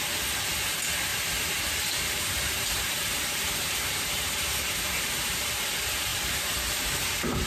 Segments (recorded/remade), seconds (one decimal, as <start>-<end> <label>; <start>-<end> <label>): 0.0-1.1 recorded; 1.1-5.6 remade; 5.6-6.1 recorded; 6.1-7.5 remade